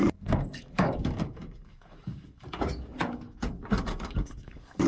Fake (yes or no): yes